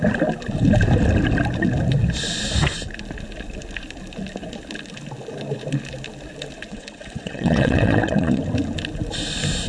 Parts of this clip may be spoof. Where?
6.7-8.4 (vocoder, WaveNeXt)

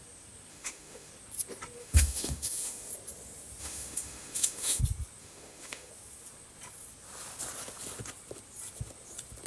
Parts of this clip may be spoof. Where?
0.5-1.1 (autoencoder, DAC-VAE); 1.8-2.9; 3.6-4.8; 5.2-5.9